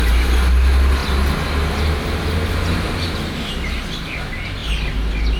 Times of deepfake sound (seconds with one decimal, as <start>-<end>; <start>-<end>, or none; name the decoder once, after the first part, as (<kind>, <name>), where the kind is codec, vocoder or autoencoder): none